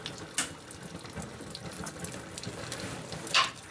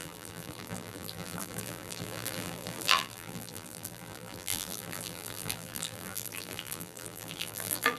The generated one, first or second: second